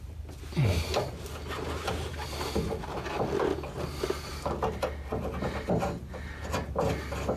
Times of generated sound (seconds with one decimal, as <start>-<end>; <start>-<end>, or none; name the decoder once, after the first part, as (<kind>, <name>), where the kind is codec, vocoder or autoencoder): none